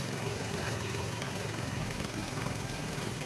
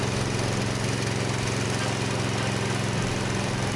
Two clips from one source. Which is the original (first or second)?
second